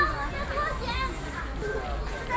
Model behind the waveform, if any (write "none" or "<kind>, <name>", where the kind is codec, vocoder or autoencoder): none